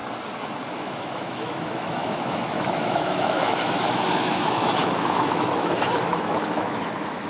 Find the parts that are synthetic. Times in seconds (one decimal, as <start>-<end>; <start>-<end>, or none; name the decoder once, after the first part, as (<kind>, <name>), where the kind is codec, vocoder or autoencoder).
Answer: 0.7-7.3 (autoencoder, DAC-VAE)